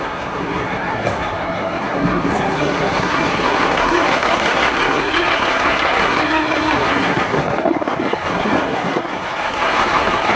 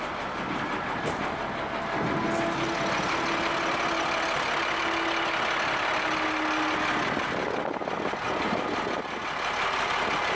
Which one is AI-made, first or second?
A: first